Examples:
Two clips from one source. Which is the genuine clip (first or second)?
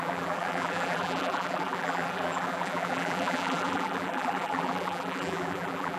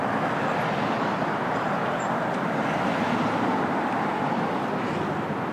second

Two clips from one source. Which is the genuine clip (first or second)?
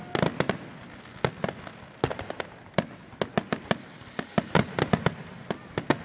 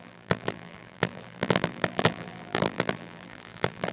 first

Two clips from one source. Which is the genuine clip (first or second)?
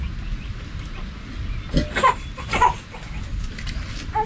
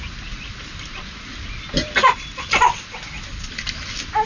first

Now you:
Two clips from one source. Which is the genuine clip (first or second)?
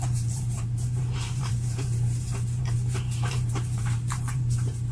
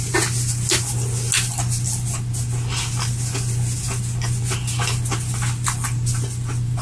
second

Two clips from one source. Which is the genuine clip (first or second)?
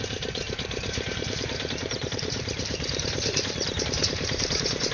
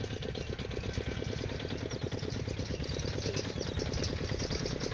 second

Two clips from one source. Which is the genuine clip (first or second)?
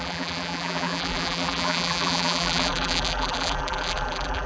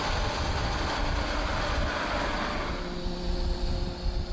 second